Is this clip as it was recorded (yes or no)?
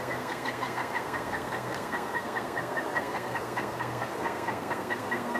no